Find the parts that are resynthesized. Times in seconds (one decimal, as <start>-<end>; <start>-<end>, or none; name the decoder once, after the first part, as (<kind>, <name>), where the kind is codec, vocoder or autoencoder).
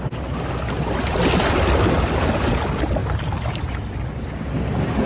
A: none